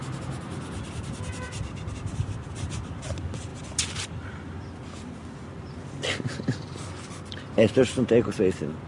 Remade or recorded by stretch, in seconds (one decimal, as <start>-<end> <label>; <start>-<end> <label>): 0.0-8.9 recorded